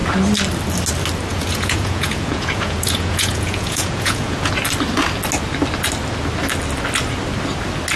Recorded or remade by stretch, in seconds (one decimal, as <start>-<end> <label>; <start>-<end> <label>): 0.0-1.3 recorded; 1.3-4.5 remade; 4.5-8.0 recorded